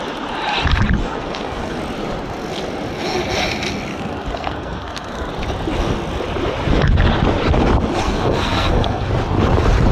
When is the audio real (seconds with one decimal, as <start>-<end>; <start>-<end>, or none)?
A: 0.0-1.0; 1.8-3.9; 5.3-8.0; 9.1-9.9